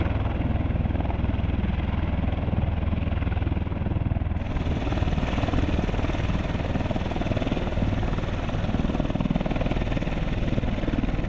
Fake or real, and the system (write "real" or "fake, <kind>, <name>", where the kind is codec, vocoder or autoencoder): real